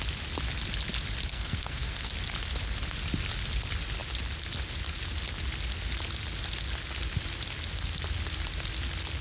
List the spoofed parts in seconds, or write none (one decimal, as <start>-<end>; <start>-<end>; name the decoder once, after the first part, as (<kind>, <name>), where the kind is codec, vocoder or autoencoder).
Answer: 1.3-2.1 (codec, SNAC)